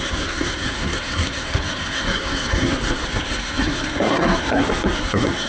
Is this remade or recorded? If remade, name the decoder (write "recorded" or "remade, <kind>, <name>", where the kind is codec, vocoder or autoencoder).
remade, codec, SNAC